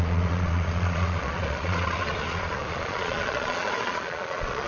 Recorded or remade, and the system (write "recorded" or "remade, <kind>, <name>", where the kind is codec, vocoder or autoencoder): remade, vocoder, Vocos